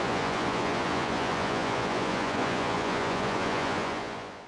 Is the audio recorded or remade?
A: remade